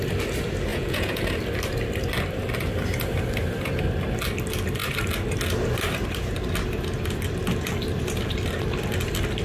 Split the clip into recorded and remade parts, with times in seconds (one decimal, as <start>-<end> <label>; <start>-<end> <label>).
0.0-0.7 recorded; 0.7-1.2 remade; 1.2-9.4 recorded